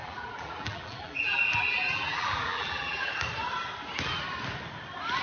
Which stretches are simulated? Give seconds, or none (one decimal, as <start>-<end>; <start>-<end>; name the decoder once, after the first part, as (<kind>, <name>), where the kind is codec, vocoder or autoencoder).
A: 0.0-3.1 (vocoder, BigVGAN v2)